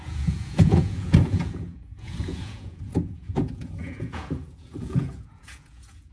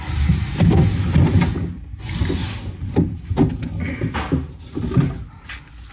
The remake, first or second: first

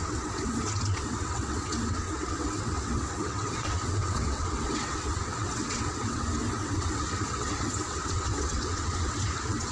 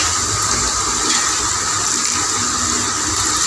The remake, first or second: first